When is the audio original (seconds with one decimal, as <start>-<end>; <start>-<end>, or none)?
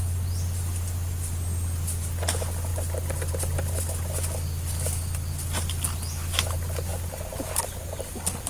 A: 0.0-8.5